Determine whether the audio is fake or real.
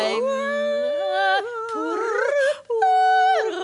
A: real